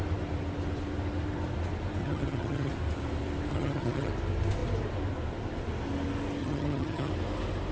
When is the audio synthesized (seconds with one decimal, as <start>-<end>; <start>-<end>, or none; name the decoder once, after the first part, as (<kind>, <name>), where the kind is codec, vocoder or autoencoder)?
2.0-2.7 (vocoder, HiFi-GAN); 3.5-4.1; 6.4-7.1